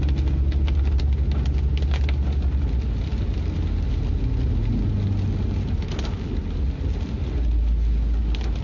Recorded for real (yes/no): yes